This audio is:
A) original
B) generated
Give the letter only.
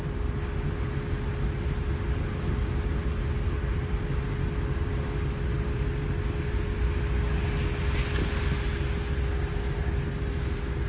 A